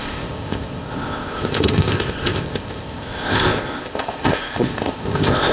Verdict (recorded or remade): remade